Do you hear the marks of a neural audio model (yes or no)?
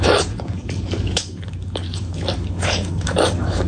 yes